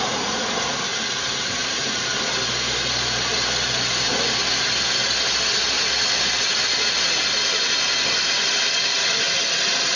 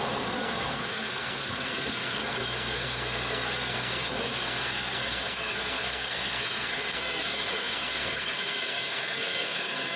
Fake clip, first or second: second